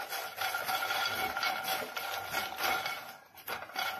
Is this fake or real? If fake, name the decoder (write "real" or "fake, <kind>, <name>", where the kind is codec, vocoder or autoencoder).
real